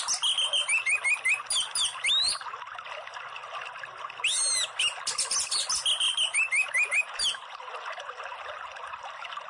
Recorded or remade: recorded